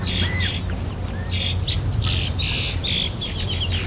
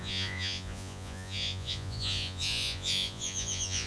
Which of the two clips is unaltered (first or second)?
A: first